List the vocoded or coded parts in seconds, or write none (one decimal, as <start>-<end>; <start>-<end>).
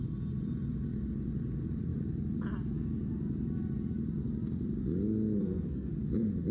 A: 5.4-5.9